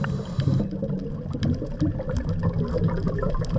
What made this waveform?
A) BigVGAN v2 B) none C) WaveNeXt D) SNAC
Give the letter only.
B